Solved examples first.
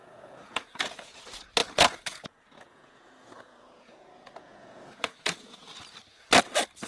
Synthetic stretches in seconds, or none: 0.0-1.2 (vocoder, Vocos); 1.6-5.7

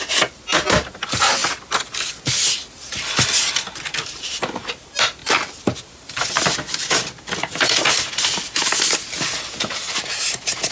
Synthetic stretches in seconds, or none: 5.2-7.6 (vocoder, BigVGAN v2)

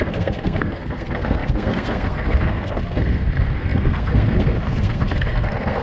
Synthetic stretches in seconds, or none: 0.0-5.8 (codec, SNAC)

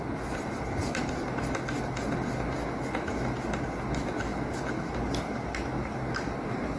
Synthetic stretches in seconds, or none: none

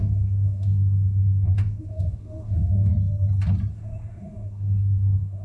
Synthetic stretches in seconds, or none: 0.0-2.9 (autoencoder, DAC-VAE); 3.7-5.4